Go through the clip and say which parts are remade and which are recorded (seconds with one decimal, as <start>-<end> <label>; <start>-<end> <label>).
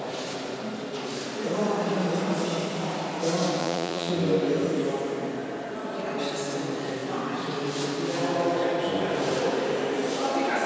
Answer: 0.0-3.6 recorded; 3.6-4.1 remade; 4.1-10.7 recorded